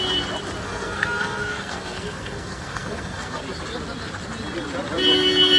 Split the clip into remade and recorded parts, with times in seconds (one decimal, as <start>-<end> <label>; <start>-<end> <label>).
0.0-0.6 recorded; 0.6-3.4 remade; 3.4-5.6 recorded